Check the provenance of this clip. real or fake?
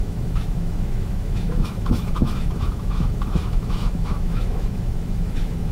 fake